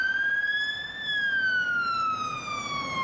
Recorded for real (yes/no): yes